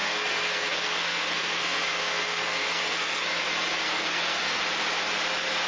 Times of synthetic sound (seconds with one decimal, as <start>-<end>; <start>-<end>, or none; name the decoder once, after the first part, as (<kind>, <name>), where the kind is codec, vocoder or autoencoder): 0.0-3.4 (codec, SNAC); 3.8-4.6